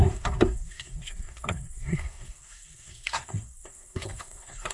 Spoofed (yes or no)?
yes